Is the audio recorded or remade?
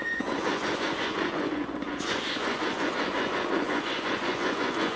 remade